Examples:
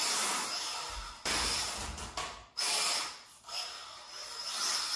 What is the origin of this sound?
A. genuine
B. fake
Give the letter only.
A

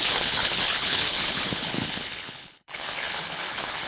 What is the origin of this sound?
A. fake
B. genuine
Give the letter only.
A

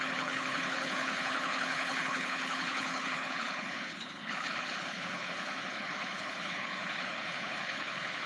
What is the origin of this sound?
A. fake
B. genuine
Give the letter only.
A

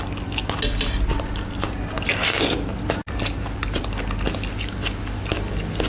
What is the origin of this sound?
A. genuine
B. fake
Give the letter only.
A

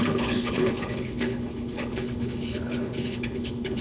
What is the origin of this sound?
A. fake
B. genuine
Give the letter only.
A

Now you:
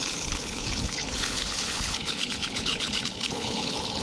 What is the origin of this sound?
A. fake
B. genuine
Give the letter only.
A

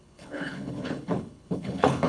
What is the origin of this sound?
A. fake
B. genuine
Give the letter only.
A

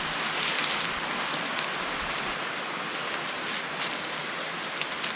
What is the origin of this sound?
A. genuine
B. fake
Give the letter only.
A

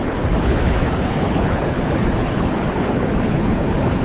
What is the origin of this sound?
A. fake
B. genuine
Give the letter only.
A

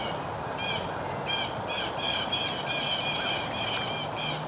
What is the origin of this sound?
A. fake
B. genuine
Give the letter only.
B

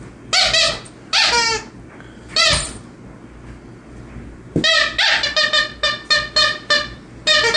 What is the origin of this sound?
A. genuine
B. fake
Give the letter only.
A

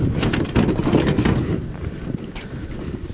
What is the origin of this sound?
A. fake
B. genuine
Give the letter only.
B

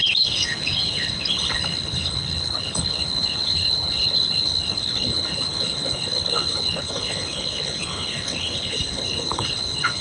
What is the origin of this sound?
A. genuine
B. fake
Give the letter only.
B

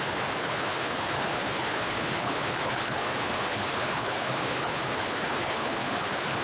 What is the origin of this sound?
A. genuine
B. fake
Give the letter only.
B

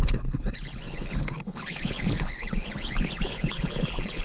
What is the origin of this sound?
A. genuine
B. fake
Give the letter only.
B